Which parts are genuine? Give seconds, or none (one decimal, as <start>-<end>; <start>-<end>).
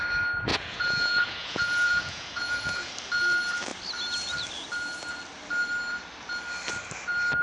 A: 0.0-0.5; 2.9-7.4